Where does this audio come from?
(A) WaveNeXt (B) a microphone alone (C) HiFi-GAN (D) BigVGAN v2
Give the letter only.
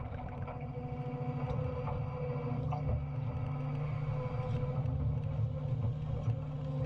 B